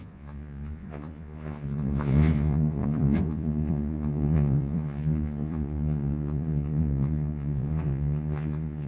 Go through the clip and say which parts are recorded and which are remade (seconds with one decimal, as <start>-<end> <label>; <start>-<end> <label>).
0.0-8.9 remade